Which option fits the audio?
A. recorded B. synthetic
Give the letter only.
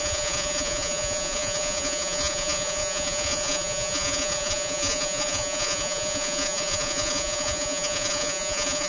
B